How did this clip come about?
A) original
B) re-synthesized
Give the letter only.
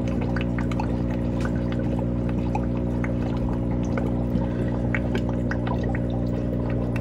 A